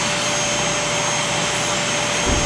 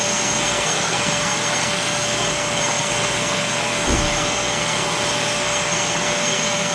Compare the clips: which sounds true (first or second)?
first